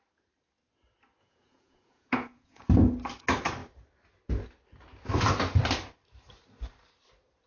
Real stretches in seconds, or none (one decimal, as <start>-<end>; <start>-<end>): 0.0-1.2; 2.7-7.5